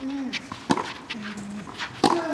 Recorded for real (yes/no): yes